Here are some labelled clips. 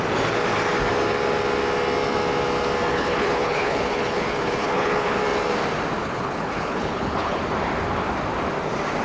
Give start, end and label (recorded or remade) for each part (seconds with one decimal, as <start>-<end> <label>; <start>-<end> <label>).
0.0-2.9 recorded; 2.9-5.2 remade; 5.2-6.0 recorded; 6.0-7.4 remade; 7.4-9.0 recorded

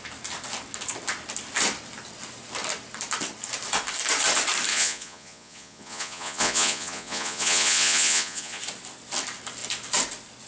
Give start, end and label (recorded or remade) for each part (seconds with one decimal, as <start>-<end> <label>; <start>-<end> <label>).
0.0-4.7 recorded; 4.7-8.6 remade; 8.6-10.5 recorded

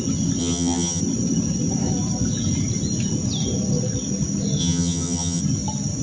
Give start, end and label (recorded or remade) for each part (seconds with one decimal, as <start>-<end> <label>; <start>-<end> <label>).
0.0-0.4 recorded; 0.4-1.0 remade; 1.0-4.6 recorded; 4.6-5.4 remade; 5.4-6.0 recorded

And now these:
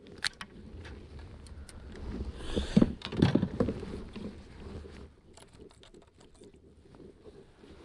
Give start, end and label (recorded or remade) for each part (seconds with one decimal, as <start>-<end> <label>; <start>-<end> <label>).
0.0-7.8 recorded